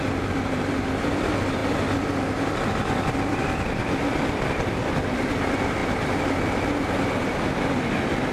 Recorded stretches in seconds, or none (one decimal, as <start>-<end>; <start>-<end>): 0.0-8.3